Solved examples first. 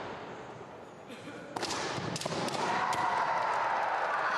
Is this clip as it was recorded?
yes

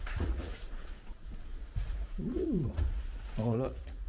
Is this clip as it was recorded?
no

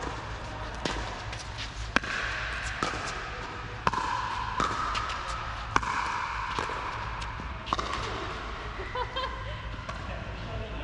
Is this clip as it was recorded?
yes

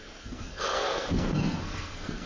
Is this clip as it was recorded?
no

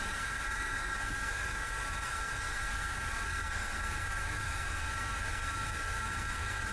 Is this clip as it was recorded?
no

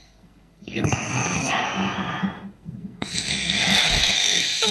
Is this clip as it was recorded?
no